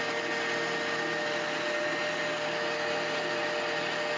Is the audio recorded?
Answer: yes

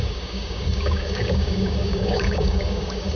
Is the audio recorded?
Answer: no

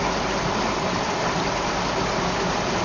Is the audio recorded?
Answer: yes